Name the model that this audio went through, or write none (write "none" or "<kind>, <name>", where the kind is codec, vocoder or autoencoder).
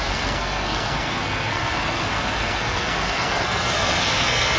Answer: codec, SNAC